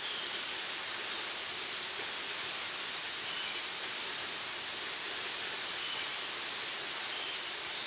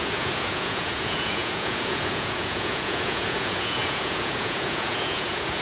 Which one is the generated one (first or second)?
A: second